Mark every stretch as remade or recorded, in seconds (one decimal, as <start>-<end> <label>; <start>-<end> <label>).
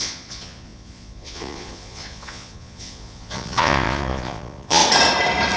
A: 0.0-4.8 remade; 4.8-5.6 recorded